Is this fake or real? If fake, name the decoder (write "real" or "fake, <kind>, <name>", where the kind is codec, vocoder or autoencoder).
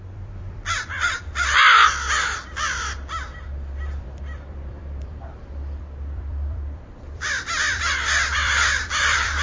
fake, vocoder, BigVGAN v2